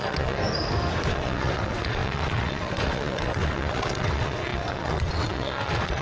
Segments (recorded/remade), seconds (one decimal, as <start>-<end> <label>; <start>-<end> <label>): 0.0-0.4 remade; 0.4-1.1 recorded; 1.1-6.0 remade